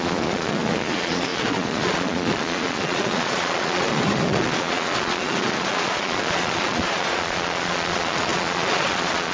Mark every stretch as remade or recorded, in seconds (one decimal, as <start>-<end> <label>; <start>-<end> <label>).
0.0-9.3 remade